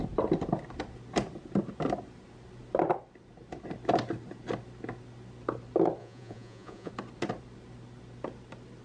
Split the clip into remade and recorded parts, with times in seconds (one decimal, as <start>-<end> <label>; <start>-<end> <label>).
0.0-6.0 recorded; 6.0-6.9 remade; 6.9-8.8 recorded